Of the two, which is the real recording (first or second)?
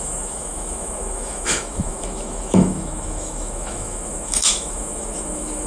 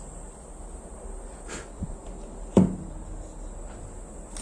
second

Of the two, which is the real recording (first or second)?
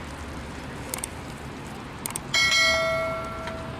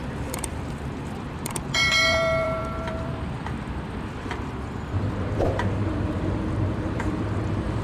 first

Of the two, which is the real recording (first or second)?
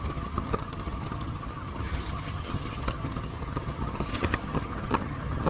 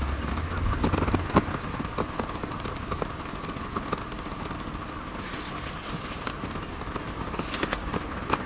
second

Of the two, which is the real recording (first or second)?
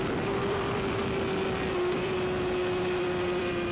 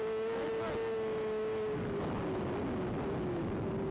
second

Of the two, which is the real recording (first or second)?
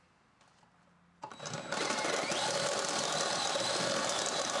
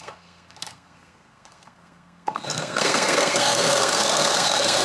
first